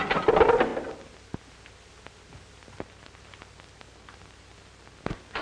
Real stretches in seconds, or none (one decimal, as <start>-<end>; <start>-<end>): 0.0-5.4